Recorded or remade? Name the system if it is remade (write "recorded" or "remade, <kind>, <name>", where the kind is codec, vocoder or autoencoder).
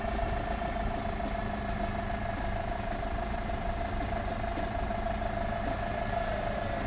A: recorded